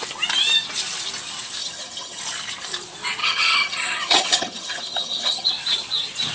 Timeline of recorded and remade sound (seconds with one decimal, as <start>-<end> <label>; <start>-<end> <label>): 0.0-1.6 recorded; 1.6-2.2 remade; 2.2-3.2 recorded; 3.2-5.5 remade; 5.5-6.3 recorded